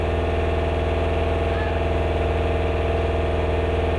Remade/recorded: recorded